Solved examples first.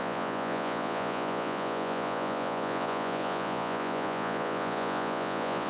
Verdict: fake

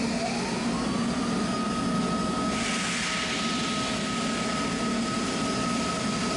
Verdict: real